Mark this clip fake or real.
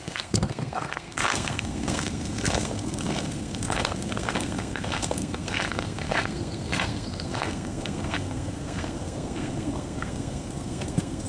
fake